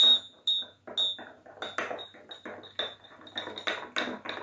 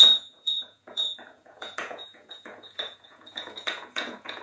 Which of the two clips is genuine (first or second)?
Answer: first